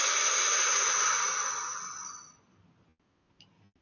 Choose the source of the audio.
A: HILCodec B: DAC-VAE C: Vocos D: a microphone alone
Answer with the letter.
D